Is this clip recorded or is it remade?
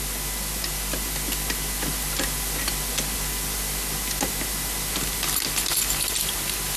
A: recorded